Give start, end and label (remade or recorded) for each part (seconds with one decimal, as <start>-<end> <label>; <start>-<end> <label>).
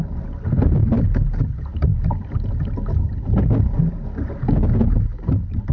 0.0-5.7 recorded